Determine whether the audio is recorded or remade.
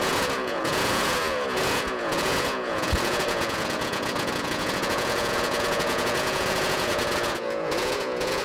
remade